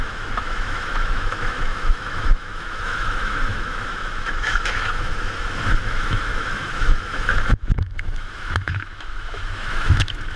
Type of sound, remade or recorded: remade